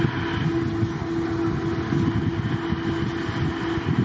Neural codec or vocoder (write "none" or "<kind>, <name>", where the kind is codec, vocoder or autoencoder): none